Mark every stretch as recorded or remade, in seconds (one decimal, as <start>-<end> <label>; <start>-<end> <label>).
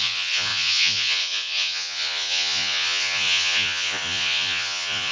0.0-5.1 remade